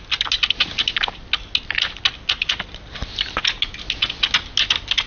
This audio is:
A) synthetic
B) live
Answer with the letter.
B